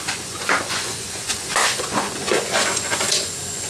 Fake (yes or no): yes